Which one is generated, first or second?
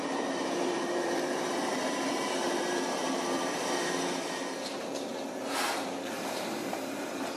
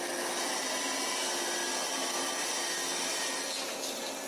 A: first